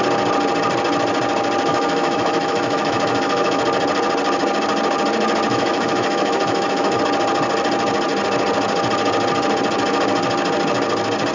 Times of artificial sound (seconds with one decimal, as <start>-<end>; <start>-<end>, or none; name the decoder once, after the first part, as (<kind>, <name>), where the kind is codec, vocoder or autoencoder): 1.7-3.6 (autoencoder, DAC-VAE); 5.5-7.0